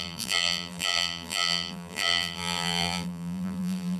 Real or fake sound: fake